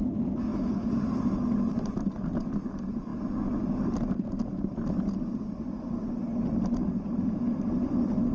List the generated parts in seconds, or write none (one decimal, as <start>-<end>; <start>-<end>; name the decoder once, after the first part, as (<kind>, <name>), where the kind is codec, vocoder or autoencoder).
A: none